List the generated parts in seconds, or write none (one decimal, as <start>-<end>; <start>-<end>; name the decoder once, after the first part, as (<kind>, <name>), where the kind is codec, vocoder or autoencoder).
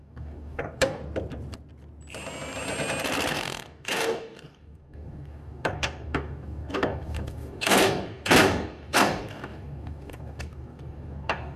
0.0-1.0 (codec, DAC); 3.3-11.6